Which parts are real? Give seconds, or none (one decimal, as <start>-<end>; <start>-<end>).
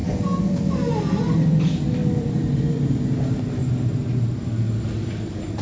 0.0-2.0; 2.8-3.6; 4.9-5.6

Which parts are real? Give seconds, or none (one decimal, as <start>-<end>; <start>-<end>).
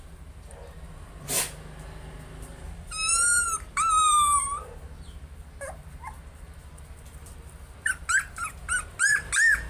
0.0-2.5; 4.7-9.7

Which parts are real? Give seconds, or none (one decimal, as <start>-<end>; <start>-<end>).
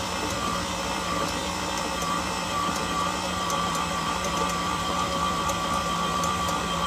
none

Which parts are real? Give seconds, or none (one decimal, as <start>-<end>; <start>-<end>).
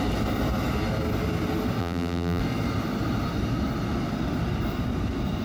0.0-1.8; 2.4-5.4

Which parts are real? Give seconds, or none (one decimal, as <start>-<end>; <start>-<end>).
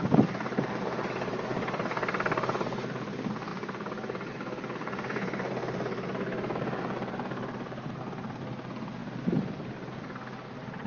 0.0-10.9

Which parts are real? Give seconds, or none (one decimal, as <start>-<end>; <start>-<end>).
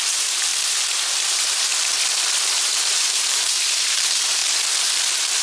0.5-1.1; 1.7-2.4; 4.4-5.4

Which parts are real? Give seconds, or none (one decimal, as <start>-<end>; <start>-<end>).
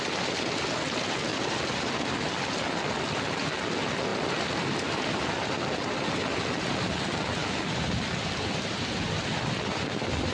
0.0-1.3; 1.9-4.1; 5.3-7.4; 8.2-10.3